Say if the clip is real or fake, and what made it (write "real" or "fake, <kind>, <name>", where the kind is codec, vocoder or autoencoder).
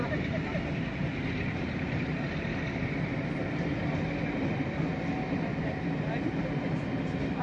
real